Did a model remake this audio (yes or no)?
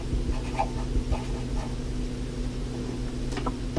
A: no